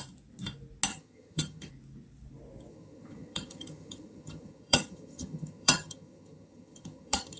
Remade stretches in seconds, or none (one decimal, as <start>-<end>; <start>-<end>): 0.9-1.7; 2.7-7.4